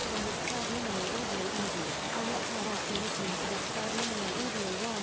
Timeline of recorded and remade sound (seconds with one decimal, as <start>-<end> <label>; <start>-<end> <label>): 0.0-1.9 recorded; 1.9-2.4 remade; 2.4-5.0 recorded